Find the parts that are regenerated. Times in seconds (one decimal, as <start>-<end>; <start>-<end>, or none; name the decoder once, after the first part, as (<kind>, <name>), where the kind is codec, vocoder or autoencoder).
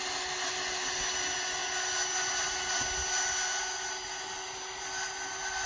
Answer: none